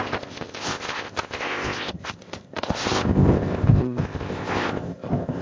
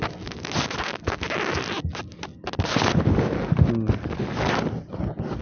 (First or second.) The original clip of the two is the second